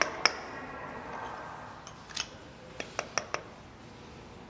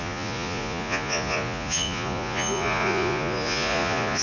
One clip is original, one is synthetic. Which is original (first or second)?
first